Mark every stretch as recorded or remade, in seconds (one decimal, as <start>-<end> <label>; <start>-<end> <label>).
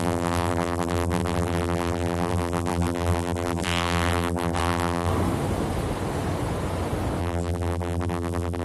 0.0-5.1 remade; 5.1-7.2 recorded; 7.2-8.6 remade